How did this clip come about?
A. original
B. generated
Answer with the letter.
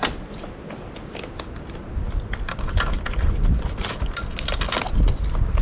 A